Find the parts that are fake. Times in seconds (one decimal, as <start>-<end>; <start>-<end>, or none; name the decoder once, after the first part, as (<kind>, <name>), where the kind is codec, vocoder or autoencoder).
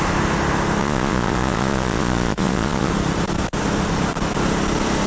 0.8-2.9 (vocoder, Vocos)